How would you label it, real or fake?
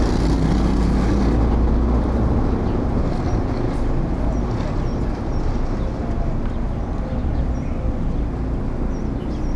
real